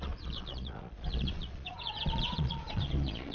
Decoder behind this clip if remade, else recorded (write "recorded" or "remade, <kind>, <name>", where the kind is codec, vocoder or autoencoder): remade, vocoder, Vocos